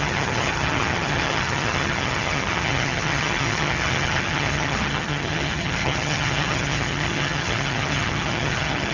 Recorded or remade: remade